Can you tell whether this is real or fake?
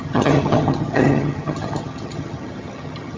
fake